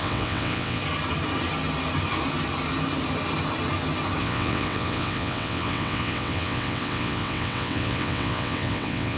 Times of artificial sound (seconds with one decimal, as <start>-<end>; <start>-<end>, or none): 0.0-0.8; 4.2-9.2